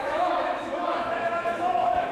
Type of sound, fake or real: fake